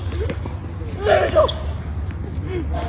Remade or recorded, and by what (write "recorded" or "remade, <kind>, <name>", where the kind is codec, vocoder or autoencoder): recorded